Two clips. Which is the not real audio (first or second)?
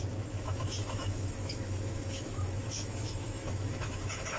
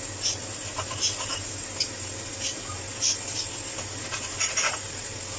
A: first